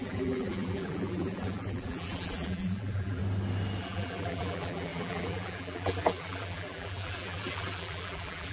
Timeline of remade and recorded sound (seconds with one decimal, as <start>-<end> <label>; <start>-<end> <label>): 0.0-3.2 remade; 3.2-3.8 recorded; 3.8-8.5 remade